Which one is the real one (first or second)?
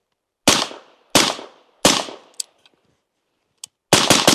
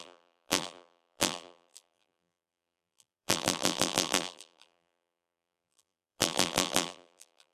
first